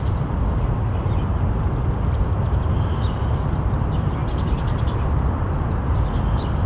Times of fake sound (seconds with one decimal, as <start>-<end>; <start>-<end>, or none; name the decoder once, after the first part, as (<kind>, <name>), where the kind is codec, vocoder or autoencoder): none